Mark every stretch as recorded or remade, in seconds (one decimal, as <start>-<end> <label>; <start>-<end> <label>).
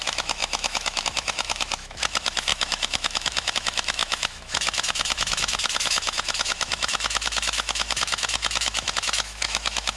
0.0-10.0 remade